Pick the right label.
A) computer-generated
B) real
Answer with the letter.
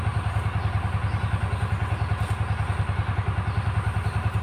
B